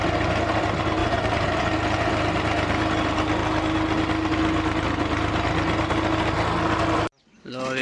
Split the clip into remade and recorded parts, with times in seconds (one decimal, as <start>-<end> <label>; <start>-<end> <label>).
0.0-1.0 recorded; 1.0-1.6 remade; 1.6-7.8 recorded